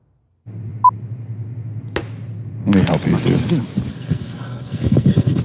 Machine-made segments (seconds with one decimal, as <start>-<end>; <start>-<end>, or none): 3.9-5.4